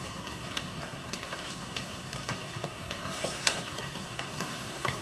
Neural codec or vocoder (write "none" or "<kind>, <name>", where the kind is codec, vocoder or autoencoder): codec, SNAC